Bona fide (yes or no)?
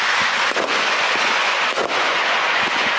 no